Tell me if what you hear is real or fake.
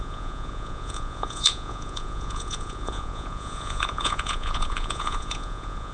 fake